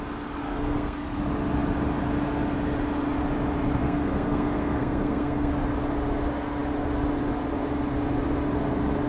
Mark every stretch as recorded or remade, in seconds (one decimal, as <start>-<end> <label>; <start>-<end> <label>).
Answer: 0.0-0.4 recorded; 0.4-1.2 remade; 1.2-3.8 recorded; 3.8-5.5 remade; 5.5-9.1 recorded